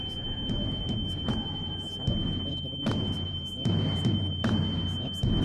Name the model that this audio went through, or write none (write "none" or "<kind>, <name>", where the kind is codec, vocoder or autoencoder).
vocoder, BigVGAN v2